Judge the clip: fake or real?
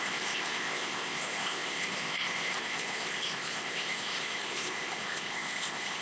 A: fake